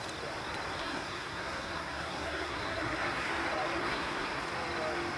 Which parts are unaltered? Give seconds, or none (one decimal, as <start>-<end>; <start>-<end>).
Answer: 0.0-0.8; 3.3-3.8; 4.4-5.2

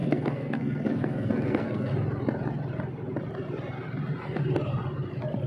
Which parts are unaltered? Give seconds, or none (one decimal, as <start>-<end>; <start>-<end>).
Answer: 1.9-5.5

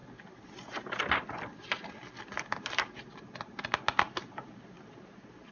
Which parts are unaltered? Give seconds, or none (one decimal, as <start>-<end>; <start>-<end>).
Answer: 0.0-5.5